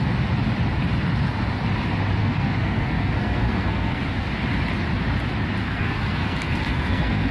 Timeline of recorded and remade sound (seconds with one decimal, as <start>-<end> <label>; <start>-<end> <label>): 0.0-2.2 recorded; 2.2-4.0 remade; 4.0-5.6 recorded; 5.6-7.3 remade